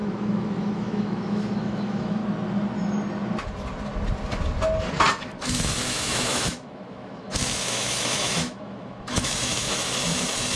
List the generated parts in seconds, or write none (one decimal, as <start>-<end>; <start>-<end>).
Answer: 0.0-2.2; 5.1-10.6